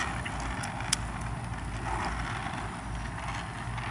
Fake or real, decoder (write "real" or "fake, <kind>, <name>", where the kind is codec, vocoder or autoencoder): real